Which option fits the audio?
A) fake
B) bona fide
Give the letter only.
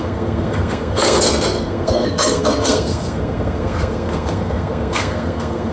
A